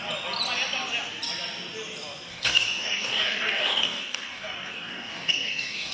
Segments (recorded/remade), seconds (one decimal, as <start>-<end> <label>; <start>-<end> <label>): 0.0-2.3 recorded; 2.3-5.9 remade